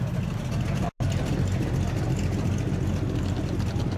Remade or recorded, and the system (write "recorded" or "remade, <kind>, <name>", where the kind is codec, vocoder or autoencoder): recorded